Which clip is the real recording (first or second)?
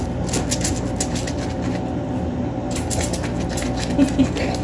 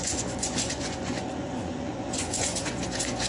first